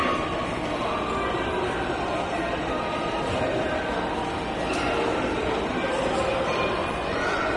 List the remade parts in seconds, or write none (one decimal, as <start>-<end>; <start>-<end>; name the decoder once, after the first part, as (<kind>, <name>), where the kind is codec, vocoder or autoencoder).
6.8-7.6 (vocoder, Vocos)